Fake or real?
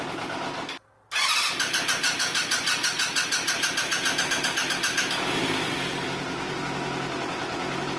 real